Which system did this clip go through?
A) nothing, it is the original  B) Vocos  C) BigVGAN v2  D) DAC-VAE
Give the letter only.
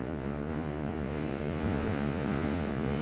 B